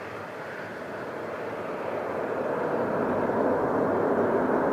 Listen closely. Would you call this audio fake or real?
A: real